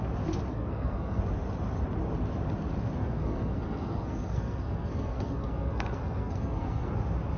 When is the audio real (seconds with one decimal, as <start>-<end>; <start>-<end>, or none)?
0.0-0.5; 1.2-3.0; 6.9-7.4